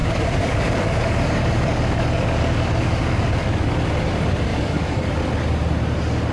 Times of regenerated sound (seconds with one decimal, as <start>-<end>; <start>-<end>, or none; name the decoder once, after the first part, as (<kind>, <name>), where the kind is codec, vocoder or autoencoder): 0.0-3.8 (codec, DAC); 4.5-5.1